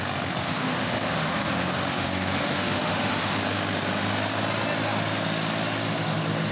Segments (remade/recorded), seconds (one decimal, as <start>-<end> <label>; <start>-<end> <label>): 0.0-0.4 recorded; 0.4-3.4 remade; 3.4-6.5 recorded